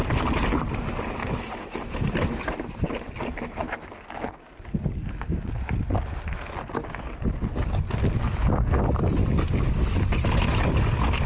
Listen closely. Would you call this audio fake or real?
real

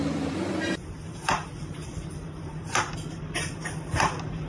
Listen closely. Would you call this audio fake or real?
fake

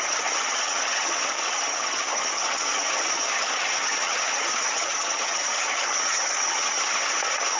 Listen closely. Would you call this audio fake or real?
fake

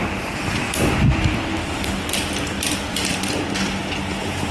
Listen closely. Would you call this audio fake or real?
fake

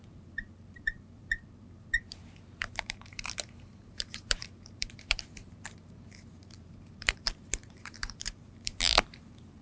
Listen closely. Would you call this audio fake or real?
fake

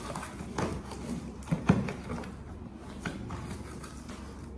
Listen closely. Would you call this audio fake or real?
real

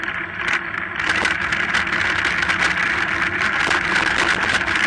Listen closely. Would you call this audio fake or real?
real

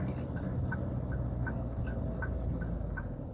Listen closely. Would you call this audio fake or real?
real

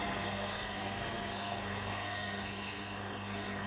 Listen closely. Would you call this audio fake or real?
fake